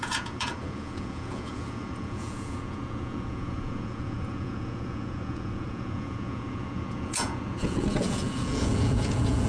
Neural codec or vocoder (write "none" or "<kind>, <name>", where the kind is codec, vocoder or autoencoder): vocoder, Vocos